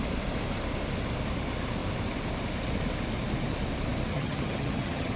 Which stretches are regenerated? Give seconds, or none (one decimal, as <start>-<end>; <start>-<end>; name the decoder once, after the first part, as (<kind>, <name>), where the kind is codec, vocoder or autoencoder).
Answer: 4.1-5.2 (vocoder, HiFi-GAN)